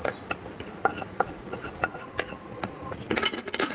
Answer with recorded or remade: remade